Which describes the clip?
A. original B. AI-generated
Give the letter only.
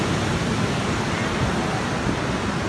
A